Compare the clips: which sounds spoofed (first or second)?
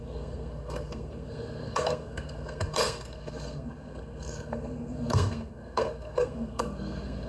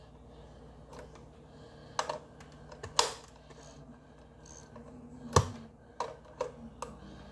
first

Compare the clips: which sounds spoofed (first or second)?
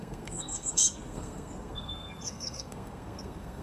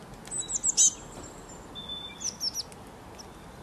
first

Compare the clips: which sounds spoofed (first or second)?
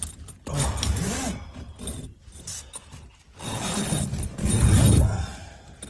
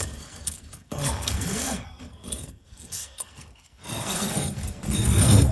second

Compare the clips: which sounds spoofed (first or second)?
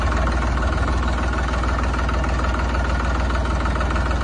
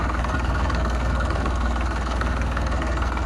second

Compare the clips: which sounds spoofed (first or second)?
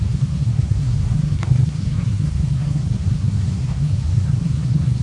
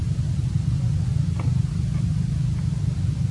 first